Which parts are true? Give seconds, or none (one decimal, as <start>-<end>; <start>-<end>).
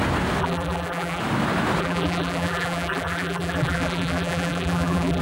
0.0-0.4; 1.2-1.8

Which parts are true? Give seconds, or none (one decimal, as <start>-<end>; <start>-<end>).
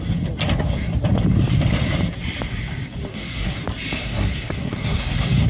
0.0-3.1; 3.6-4.0; 5.0-5.5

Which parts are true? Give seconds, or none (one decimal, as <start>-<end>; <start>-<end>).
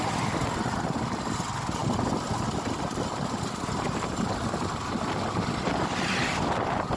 0.0-7.0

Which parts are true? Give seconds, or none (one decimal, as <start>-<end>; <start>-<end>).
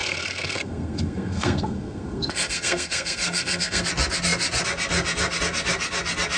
3.8-6.4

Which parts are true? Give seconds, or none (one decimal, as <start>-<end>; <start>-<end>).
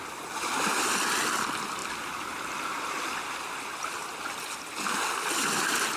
0.0-1.8; 4.5-6.0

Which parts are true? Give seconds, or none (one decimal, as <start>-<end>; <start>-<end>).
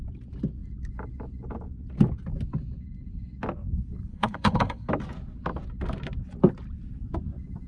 0.0-4.1; 4.9-7.7